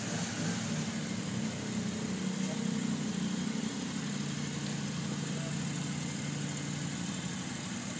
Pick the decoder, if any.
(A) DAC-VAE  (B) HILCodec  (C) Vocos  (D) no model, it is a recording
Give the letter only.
D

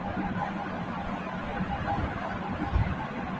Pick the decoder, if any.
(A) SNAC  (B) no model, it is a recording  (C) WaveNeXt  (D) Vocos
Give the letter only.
B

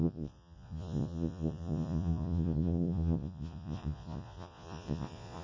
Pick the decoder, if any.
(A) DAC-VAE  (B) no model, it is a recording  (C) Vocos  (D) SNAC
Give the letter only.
C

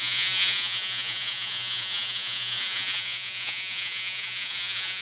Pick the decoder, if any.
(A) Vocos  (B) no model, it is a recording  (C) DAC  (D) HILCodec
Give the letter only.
A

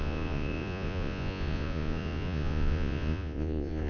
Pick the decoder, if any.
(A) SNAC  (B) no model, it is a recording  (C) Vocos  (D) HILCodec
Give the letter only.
C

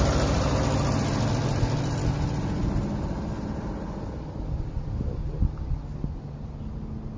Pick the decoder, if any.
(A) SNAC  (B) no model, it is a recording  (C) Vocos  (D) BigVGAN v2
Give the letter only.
B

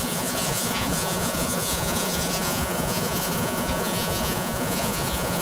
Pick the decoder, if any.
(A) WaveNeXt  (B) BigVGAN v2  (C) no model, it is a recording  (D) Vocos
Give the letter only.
D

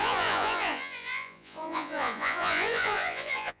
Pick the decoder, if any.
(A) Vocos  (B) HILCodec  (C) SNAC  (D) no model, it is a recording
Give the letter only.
A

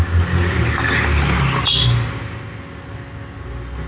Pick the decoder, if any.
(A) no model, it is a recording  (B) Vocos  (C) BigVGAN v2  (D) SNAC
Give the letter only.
A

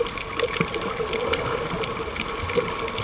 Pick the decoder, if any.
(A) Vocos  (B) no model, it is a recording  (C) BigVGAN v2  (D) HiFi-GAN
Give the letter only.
B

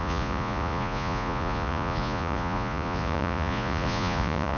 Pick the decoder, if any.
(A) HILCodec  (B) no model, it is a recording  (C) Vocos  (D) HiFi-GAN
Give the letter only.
C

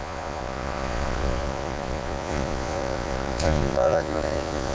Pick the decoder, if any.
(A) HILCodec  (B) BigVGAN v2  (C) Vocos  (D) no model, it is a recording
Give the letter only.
C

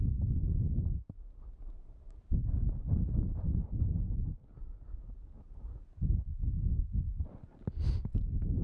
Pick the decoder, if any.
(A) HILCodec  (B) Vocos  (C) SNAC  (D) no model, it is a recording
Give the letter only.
D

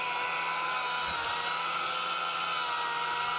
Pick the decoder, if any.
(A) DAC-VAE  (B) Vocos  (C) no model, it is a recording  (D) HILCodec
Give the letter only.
C